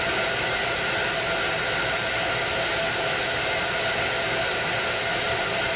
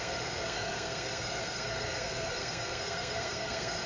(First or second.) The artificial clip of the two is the second